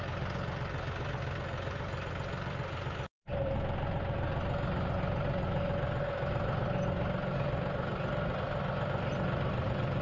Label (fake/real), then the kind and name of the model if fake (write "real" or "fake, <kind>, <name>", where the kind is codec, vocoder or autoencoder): real